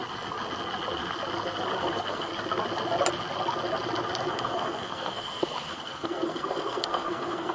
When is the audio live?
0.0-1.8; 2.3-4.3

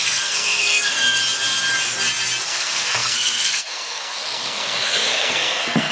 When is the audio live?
1.2-2.4

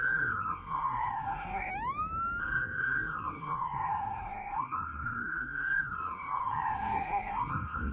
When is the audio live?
1.7-2.4